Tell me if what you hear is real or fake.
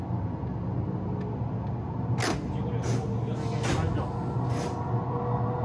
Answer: real